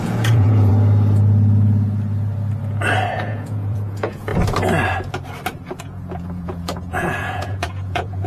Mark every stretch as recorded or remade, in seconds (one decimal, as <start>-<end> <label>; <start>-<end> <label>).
0.0-0.7 remade; 0.7-3.1 recorded; 3.1-4.3 remade; 4.3-5.8 recorded; 5.8-8.3 remade

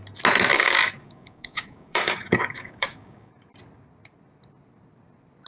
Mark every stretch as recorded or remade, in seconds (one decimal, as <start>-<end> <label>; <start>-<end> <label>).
0.0-0.5 recorded; 0.5-3.3 remade; 3.3-5.5 recorded

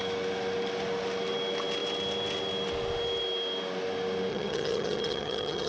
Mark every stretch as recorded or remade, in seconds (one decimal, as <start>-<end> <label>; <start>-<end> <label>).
0.0-4.3 recorded; 4.3-5.7 remade

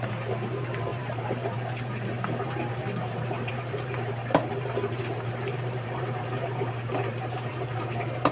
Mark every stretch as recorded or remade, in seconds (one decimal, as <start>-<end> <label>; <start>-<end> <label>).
0.0-8.3 remade

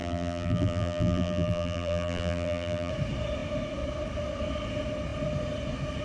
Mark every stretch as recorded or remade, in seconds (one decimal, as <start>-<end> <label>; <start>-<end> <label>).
0.0-2.9 remade; 2.9-6.0 recorded

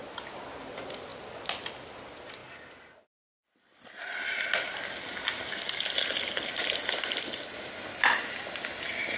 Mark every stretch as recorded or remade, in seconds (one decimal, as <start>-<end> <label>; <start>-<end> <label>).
0.0-9.2 recorded

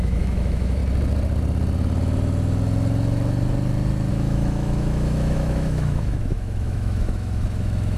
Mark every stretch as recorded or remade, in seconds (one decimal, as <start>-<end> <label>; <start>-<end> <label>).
0.0-0.8 remade; 0.8-4.1 recorded; 4.1-8.0 remade